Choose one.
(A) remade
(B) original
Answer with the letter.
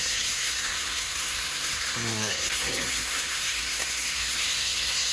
A